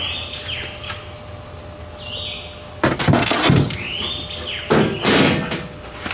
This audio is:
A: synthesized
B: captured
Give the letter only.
B